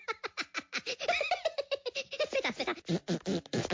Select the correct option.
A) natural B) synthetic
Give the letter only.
A